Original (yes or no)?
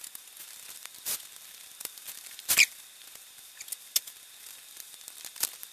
yes